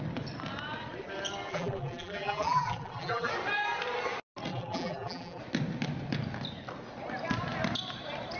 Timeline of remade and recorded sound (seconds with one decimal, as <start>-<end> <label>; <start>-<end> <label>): 0.0-1.5 recorded; 1.5-3.3 remade; 3.3-4.5 recorded; 4.5-5.4 remade; 5.4-8.4 recorded